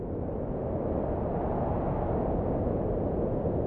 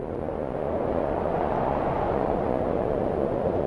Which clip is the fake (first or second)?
second